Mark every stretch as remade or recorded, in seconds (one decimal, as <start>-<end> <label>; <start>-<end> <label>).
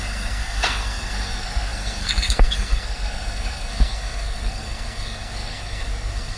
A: 0.0-6.4 remade